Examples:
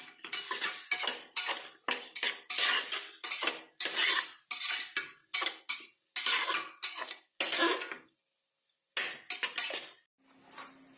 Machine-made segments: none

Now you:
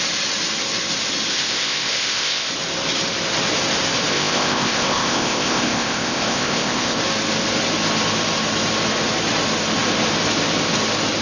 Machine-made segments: 1.3-2.5 (codec, ZipCodec); 4.1-7.0